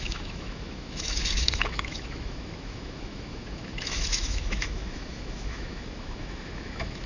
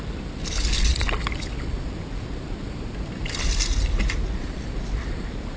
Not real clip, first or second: first